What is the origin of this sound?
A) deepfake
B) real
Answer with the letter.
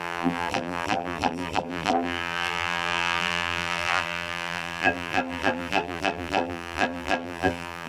A